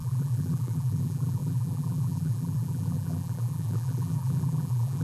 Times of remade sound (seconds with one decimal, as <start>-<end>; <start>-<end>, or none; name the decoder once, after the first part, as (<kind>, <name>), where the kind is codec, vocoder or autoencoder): 0.0-5.0 (vocoder, BigVGAN v2)